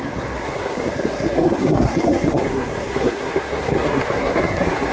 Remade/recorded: remade